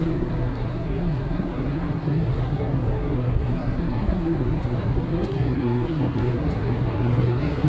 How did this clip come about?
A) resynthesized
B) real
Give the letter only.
A